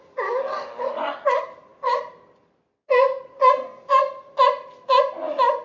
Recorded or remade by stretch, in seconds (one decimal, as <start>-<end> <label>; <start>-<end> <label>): 0.0-5.6 recorded